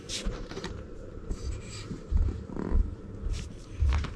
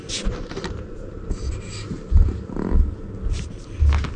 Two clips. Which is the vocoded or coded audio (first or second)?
first